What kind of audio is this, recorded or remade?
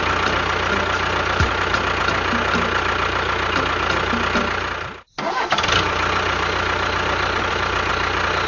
recorded